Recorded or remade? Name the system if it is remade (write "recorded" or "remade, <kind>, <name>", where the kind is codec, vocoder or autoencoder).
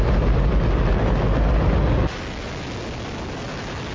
recorded